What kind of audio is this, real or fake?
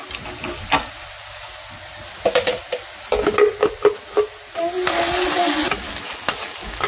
real